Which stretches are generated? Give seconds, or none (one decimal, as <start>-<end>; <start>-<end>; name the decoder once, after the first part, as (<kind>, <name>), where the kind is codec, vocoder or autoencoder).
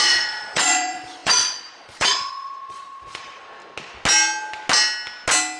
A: 0.0-3.4 (vocoder, Vocos)